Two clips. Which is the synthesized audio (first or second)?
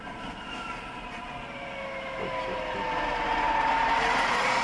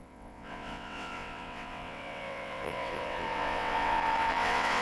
second